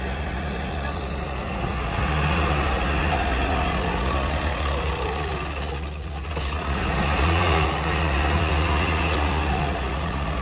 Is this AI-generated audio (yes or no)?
yes